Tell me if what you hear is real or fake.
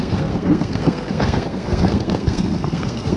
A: fake